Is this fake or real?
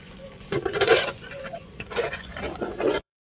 fake